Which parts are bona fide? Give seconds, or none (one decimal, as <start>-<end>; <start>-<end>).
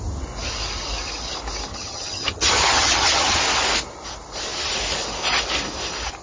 0.0-1.7; 3.4-6.2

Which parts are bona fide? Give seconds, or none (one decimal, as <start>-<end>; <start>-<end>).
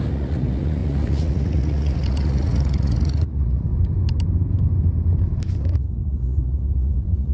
3.7-5.6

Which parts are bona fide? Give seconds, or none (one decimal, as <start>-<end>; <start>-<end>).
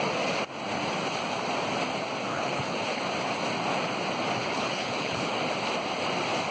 0.0-2.3; 3.0-4.4; 5.4-6.5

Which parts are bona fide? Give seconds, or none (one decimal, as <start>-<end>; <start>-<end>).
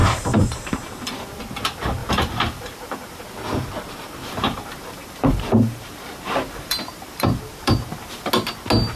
1.4-2.0; 3.2-4.2; 8.3-9.0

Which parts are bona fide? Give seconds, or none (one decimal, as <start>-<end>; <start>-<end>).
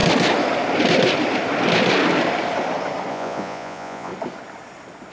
0.0-3.1; 4.1-5.1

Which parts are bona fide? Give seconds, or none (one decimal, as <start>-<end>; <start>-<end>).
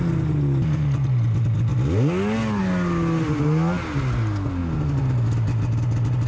0.0-6.3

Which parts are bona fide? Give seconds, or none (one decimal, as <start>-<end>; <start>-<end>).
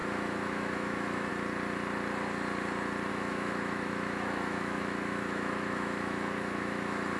1.3-3.1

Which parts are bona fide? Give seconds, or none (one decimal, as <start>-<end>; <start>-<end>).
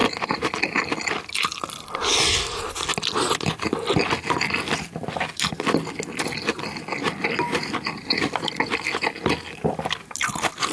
0.0-10.7